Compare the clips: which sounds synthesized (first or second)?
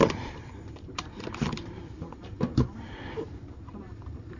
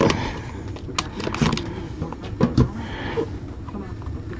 first